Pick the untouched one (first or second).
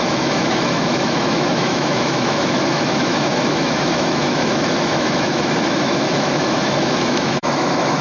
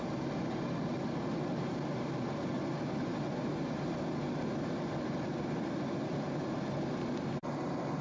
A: second